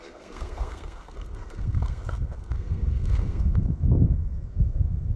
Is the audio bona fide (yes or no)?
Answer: no